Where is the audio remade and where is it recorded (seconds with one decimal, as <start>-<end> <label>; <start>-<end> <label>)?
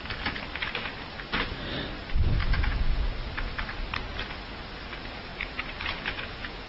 0.0-2.4 recorded; 2.4-3.1 remade; 3.1-5.3 recorded; 5.3-6.7 remade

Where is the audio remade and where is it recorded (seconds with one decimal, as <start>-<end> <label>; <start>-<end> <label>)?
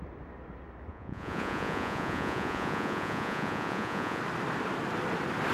0.0-0.9 recorded; 0.9-4.2 remade; 4.2-5.5 recorded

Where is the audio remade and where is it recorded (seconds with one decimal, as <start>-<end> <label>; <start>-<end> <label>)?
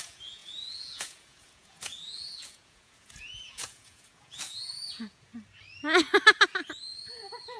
0.0-5.3 remade; 5.3-6.8 recorded; 6.8-7.6 remade